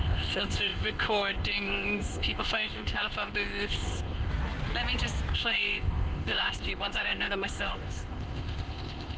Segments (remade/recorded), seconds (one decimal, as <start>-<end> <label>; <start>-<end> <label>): 0.0-4.3 remade; 4.3-5.3 recorded; 5.3-9.2 remade